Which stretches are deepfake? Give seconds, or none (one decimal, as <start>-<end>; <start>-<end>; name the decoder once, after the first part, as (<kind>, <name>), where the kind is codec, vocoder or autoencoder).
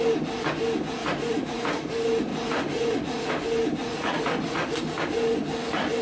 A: 1.0-1.9 (vocoder, Vocos); 2.3-3.3; 3.8-4.7